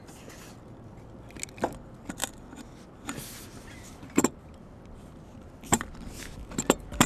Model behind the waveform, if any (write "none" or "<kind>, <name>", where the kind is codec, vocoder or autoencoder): none